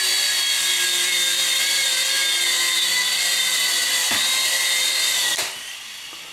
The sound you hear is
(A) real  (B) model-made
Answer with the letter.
B